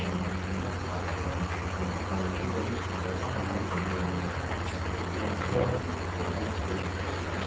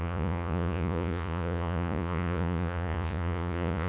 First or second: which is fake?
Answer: second